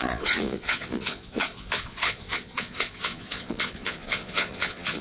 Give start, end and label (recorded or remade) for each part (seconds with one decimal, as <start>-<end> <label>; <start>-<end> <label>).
0.0-5.0 remade